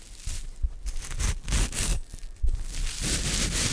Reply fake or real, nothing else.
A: real